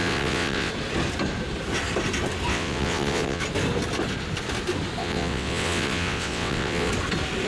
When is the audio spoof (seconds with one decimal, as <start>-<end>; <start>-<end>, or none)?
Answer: 0.0-0.7; 2.5-3.4; 5.0-6.9